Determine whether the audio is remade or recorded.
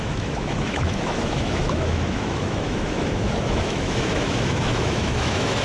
remade